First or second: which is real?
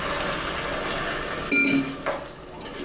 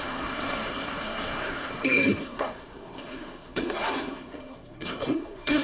first